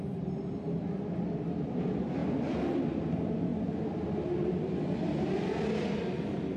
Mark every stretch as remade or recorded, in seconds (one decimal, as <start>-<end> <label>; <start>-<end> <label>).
0.0-3.5 recorded; 3.5-5.7 remade; 5.7-6.6 recorded